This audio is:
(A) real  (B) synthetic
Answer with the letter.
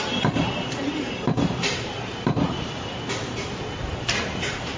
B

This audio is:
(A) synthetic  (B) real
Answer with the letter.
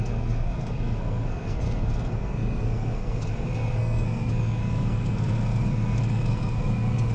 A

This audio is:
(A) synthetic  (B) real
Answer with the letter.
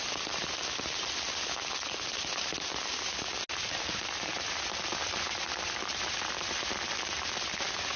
B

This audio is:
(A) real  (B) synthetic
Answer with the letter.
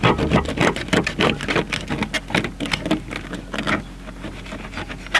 A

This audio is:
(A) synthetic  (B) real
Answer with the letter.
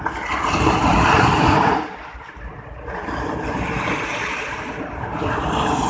B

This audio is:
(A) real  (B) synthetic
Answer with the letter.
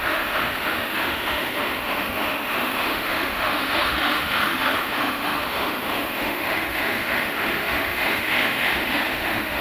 B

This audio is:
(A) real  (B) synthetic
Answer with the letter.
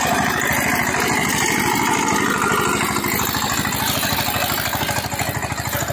A